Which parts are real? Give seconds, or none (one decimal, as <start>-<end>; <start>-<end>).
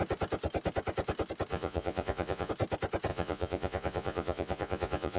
0.0-1.5; 2.5-3.1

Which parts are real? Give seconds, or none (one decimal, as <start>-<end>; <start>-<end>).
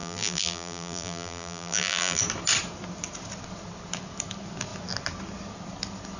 2.2-6.2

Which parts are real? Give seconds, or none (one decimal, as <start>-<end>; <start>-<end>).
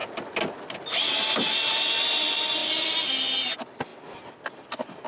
0.0-5.1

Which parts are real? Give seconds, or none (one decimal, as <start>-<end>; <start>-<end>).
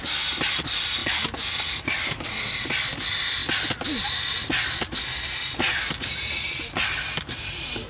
0.0-7.9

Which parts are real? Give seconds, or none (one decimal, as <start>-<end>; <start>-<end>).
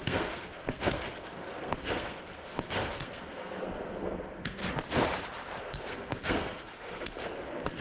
4.6-5.6